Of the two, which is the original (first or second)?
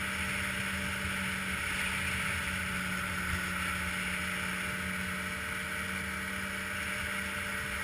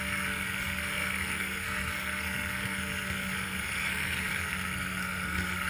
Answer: first